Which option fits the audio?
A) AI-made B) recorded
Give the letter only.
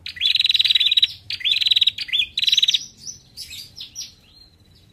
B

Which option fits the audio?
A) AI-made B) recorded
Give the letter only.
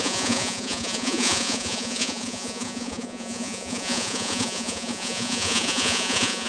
A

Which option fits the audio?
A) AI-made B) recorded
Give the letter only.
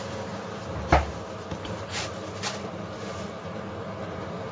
B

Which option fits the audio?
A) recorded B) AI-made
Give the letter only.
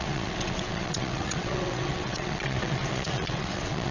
B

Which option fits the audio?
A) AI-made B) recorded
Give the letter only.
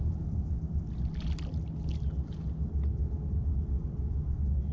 B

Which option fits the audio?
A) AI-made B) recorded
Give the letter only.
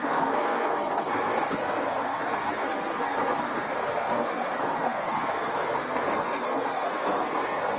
A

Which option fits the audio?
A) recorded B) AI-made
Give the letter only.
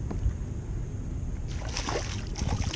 A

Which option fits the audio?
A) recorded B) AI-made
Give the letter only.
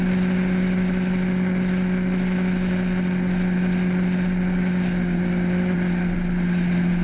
A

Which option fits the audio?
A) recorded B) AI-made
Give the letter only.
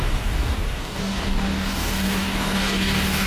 B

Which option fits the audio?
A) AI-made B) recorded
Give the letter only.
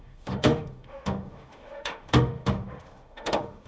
A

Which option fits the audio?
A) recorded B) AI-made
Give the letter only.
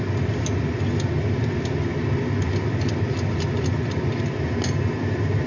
A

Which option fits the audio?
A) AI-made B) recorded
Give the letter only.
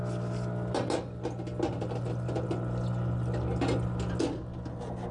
B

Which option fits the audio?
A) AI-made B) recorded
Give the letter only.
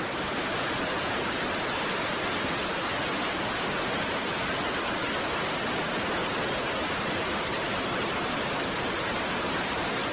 B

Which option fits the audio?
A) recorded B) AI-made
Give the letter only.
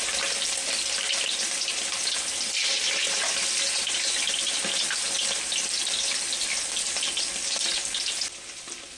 A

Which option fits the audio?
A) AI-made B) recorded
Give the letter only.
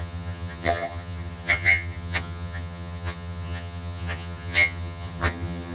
A